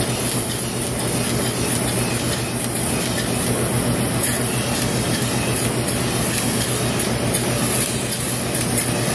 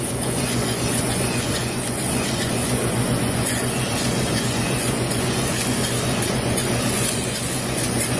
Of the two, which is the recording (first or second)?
first